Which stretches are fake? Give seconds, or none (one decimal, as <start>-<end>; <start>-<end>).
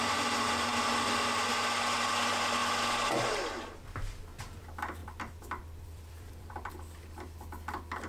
5.0-6.7